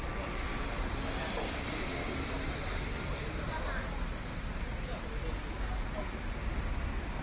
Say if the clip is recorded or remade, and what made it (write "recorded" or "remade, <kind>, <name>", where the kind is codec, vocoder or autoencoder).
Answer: recorded